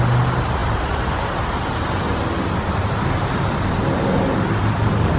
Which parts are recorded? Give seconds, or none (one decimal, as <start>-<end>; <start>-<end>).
0.0-5.2